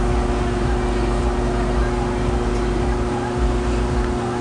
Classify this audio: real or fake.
real